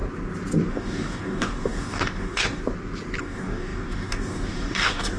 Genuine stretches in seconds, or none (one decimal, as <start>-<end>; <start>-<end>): 0.0-0.7; 2.6-3.2